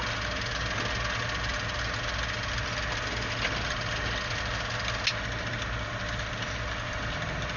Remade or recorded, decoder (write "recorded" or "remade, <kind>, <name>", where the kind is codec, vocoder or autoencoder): recorded